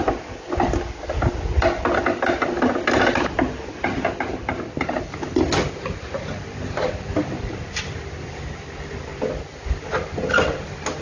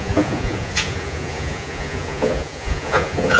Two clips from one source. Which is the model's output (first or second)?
second